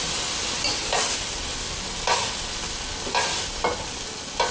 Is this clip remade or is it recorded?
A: recorded